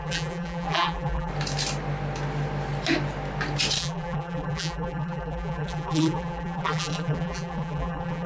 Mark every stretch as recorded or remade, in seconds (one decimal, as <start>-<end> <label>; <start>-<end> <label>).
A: 0.0-1.3 remade; 1.3-3.8 recorded; 3.8-8.3 remade